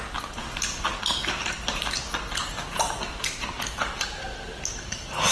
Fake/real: real